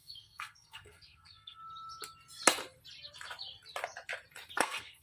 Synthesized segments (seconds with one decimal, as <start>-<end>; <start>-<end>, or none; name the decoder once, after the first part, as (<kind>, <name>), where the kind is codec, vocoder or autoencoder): 0.0-1.6 (codec, SNAC); 4.6-5.0